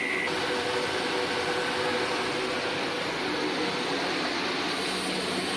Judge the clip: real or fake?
real